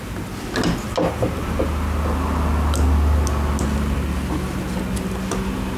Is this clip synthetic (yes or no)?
no